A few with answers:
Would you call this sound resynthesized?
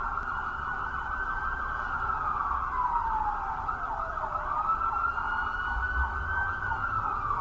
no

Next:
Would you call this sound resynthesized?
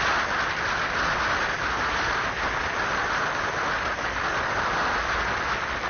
no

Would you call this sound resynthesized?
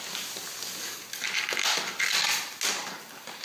no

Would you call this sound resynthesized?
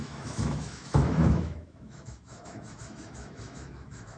yes